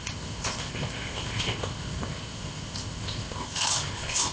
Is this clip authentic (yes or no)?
no